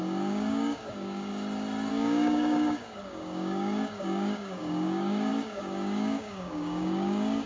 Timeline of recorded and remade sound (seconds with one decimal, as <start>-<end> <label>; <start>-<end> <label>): 0.0-1.3 remade; 1.3-1.9 recorded; 1.9-7.5 remade